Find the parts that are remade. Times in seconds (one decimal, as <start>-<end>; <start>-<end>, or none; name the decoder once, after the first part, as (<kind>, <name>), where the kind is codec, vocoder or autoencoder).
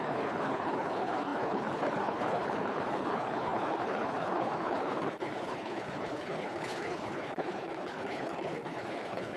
0.0-9.4 (codec, HILCodec)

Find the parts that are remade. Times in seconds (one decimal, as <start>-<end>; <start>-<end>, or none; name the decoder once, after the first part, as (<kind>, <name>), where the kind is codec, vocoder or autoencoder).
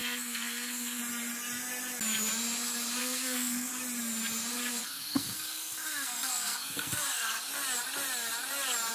0.0-1.0 (codec, SNAC); 3.0-3.7; 4.8-7.5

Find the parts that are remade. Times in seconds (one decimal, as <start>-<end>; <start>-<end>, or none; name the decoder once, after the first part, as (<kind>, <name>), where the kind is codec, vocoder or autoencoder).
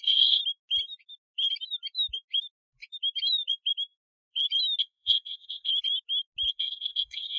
0.0-0.4 (codec, SNAC); 4.8-5.7; 6.5-7.4